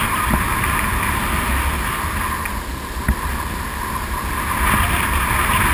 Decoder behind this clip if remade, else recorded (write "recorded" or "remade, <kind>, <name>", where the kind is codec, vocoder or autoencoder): recorded